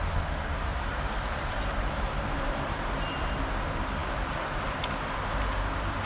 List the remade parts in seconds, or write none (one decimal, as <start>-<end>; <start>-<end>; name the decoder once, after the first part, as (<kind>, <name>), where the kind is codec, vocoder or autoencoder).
0.7-3.4 (vocoder, BigVGAN v2)